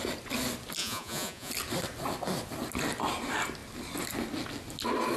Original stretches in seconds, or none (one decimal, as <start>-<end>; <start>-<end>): 0.0-0.8; 1.5-5.2